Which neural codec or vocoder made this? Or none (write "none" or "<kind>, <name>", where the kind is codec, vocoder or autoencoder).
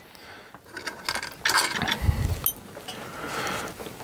none